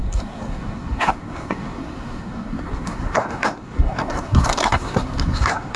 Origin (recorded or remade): remade